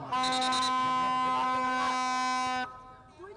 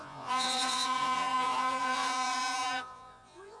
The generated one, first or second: second